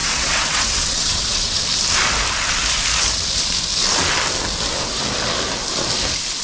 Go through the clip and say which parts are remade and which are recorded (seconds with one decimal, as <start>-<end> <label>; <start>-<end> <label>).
0.0-1.6 remade; 1.6-6.4 recorded